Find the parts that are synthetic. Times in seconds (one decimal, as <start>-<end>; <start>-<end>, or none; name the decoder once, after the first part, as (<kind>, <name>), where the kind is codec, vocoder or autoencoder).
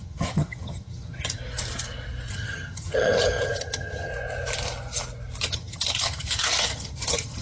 0.0-1.4 (vocoder, HiFi-GAN); 2.3-4.1; 5.4-7.4